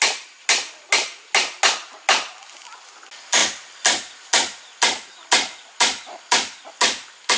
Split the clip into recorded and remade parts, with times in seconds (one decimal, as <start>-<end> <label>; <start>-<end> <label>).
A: 0.0-7.4 recorded